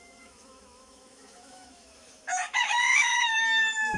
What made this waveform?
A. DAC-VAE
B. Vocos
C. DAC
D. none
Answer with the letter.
A